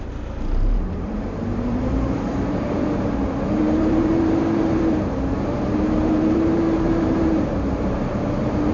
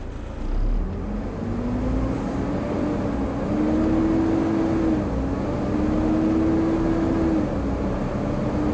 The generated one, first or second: first